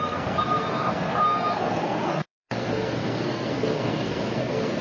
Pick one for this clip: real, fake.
fake